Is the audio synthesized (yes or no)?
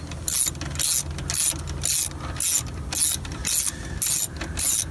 no